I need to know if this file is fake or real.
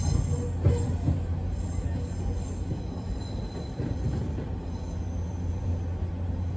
real